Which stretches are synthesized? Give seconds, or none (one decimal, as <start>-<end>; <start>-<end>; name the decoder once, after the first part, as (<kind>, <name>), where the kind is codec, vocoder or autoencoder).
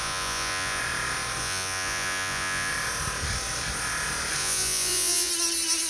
0.0-0.8 (vocoder, Vocos); 1.4-2.7; 4.4-5.3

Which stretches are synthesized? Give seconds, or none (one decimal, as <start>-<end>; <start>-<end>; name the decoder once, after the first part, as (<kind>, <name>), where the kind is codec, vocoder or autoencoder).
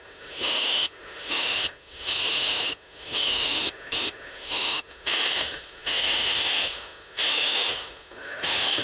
0.0-8.8 (autoencoder, DAC-VAE)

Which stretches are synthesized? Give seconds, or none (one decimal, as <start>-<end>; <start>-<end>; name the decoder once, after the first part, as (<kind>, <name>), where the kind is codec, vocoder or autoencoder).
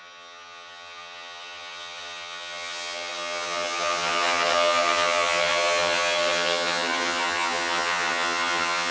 0.0-8.9 (vocoder, HiFi-GAN)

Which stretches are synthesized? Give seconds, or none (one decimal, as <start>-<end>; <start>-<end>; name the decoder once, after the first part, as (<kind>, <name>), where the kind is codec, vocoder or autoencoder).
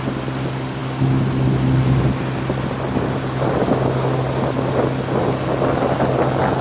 none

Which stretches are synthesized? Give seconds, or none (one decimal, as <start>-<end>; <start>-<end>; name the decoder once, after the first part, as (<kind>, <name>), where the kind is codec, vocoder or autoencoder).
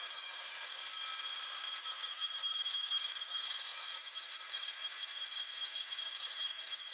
0.0-0.8 (autoencoder, DAC-VAE); 1.8-6.9